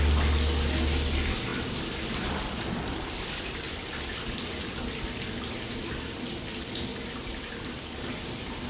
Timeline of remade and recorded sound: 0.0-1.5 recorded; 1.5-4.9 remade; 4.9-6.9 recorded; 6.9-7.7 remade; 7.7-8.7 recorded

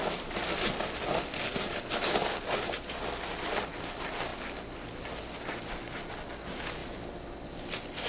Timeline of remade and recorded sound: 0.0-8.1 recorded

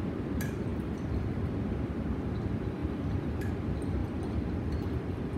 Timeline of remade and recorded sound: 0.0-2.8 recorded; 2.8-3.5 remade; 3.5-5.4 recorded

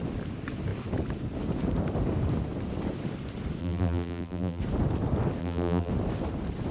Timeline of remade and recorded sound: 0.0-3.6 recorded; 3.6-4.6 remade; 4.6-5.4 recorded; 5.4-5.9 remade; 5.9-6.7 recorded

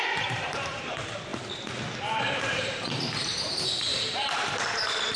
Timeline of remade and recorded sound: 0.0-1.3 remade; 1.3-2.4 recorded; 2.4-5.2 remade